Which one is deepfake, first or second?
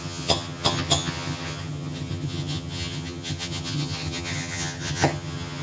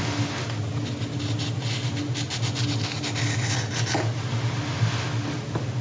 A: first